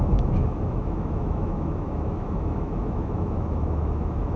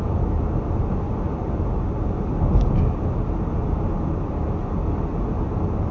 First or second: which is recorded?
second